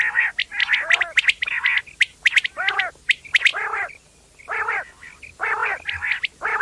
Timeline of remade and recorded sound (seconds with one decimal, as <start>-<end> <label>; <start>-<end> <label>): 0.0-3.5 recorded; 3.5-5.0 remade; 5.0-5.6 recorded; 5.6-6.6 remade